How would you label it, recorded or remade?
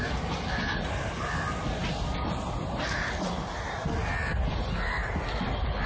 recorded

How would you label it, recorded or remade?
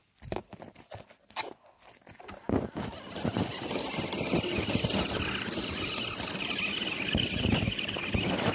recorded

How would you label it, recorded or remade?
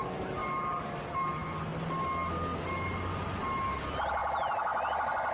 recorded